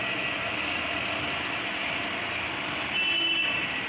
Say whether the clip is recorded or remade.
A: recorded